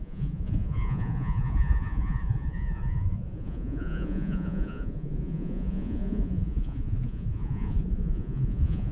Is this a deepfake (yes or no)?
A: yes